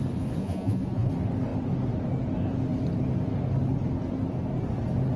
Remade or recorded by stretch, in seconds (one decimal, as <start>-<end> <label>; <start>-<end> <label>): 0.0-0.4 recorded; 0.4-1.1 remade; 1.1-5.2 recorded